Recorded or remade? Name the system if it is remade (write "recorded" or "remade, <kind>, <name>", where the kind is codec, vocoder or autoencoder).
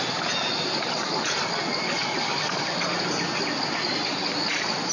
recorded